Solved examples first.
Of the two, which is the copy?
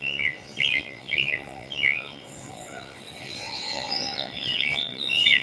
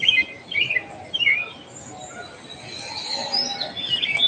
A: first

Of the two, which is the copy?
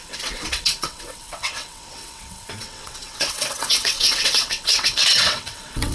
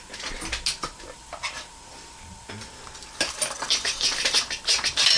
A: first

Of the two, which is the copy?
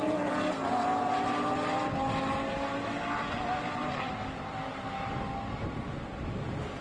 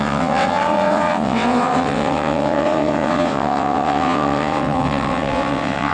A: second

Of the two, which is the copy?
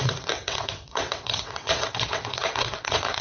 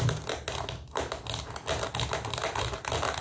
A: first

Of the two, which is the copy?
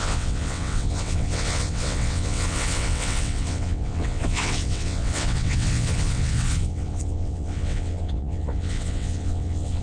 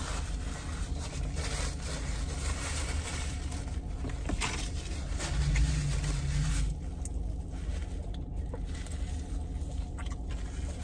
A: first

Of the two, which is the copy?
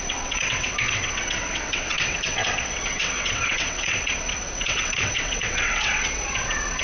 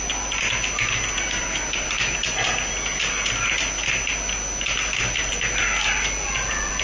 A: first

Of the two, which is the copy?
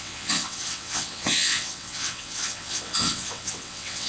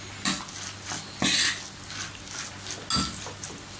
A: first